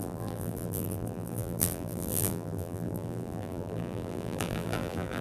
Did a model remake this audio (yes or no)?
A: yes